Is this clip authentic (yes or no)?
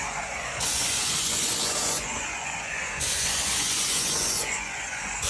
no